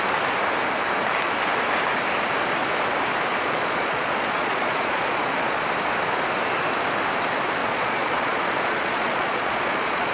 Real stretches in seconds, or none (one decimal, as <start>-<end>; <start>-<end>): 0.0-3.3; 5.6-7.6